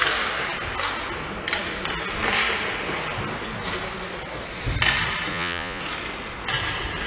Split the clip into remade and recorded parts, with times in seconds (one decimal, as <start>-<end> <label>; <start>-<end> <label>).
0.0-5.3 recorded; 5.3-5.8 remade; 5.8-7.1 recorded